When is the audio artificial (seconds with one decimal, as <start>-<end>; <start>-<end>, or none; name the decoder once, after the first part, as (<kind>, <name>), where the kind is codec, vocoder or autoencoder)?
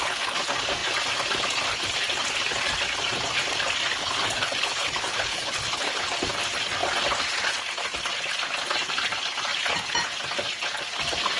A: 4.0-6.0 (codec, HILCodec)